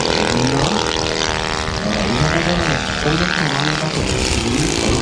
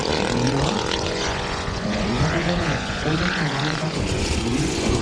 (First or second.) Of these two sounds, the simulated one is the second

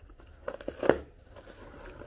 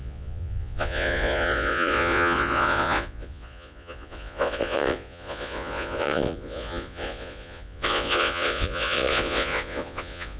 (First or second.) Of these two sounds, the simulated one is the second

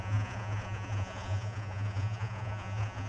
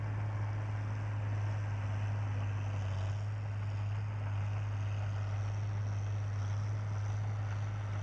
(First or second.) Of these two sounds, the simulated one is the first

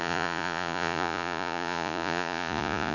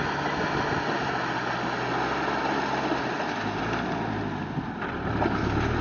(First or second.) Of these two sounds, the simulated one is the first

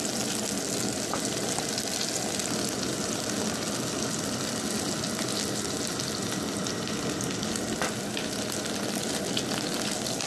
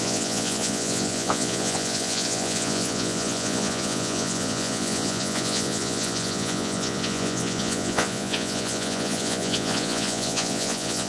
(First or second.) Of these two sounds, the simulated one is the second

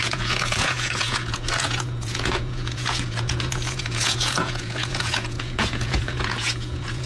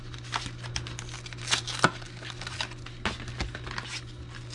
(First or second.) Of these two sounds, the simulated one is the first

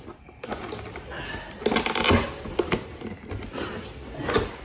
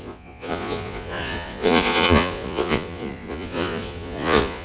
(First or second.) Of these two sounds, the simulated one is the second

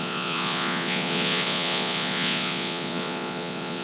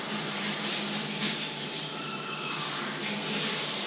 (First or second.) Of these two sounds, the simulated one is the first